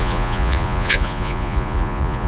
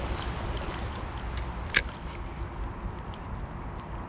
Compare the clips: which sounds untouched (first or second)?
second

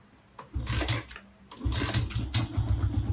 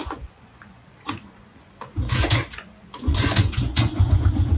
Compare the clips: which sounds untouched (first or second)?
first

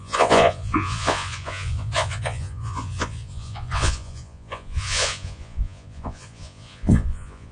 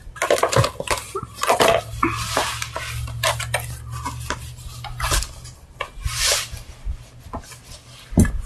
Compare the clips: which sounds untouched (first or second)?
second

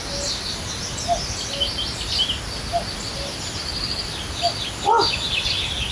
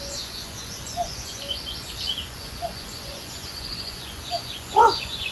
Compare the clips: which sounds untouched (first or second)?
first